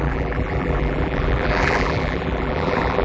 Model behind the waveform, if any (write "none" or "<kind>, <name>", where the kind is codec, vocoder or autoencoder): vocoder, BigVGAN v2